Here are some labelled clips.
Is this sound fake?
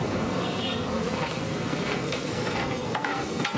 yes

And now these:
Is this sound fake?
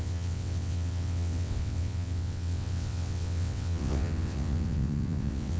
yes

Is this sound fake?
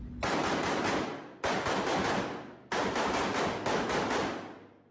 no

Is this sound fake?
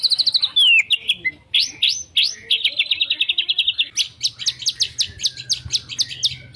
no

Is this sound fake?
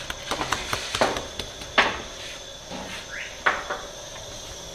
no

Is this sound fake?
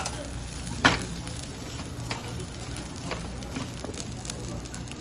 no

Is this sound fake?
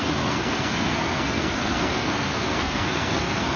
yes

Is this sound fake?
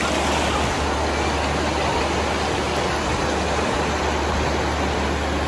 no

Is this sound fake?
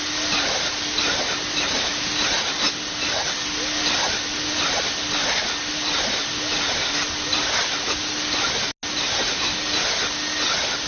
no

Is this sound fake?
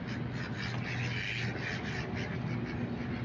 no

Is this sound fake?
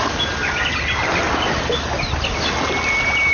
no